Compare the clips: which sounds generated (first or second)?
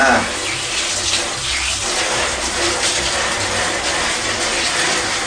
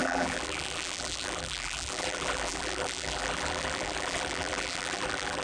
second